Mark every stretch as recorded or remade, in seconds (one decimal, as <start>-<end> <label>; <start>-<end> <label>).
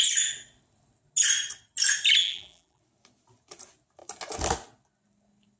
0.0-2.2 recorded; 2.2-2.8 remade; 2.8-5.6 recorded